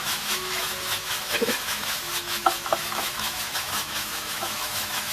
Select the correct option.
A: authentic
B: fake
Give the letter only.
B